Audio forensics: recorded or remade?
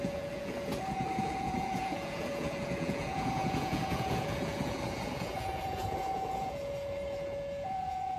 remade